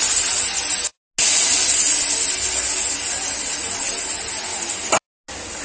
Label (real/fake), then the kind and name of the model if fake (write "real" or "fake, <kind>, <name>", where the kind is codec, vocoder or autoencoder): real